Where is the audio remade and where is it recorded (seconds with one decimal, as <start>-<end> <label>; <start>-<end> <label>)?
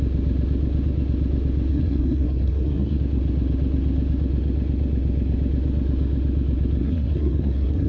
0.0-1.7 recorded; 1.7-3.0 remade; 3.0-6.8 recorded; 6.8-7.9 remade